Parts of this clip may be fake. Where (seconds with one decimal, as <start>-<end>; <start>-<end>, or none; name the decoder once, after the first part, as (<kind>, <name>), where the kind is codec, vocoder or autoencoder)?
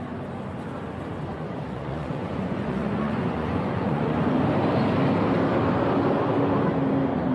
1.3-4.3 (vocoder, Vocos)